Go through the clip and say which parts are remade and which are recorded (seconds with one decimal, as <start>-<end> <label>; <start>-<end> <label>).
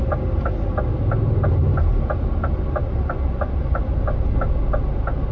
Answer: 0.0-5.3 recorded